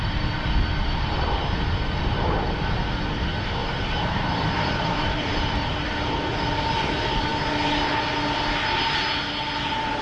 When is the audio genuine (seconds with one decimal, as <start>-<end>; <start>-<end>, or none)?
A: 0.0-3.6; 6.1-10.0